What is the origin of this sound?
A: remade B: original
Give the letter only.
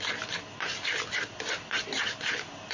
B